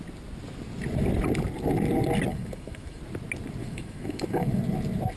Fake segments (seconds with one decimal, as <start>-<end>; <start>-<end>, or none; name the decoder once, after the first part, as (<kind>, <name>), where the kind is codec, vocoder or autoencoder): 2.3-3.0 (autoencoder, DAC-VAE); 3.6-4.6